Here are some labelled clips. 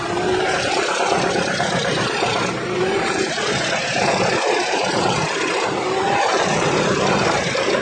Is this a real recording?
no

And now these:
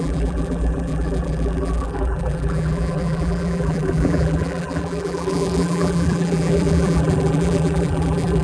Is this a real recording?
no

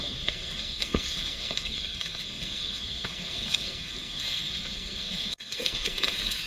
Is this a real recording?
no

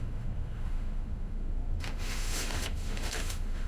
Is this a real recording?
no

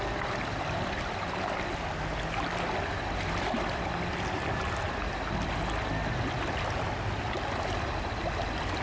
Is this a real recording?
yes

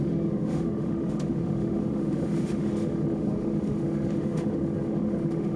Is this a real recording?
no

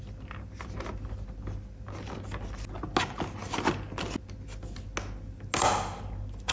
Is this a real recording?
yes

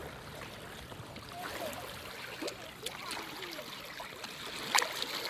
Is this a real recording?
yes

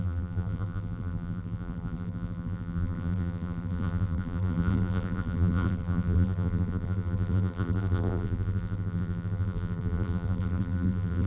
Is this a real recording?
no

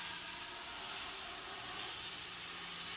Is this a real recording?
yes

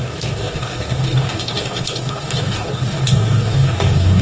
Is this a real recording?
no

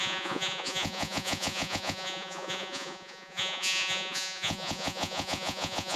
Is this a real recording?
no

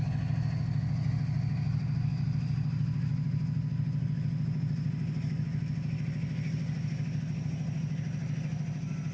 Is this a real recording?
yes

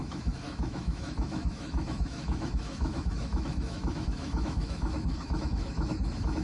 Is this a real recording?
no